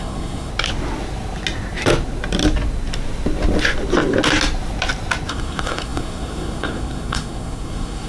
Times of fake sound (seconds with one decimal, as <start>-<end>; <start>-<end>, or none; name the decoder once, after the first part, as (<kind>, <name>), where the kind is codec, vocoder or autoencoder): 0.0-0.5 (codec, SNAC); 5.3-8.1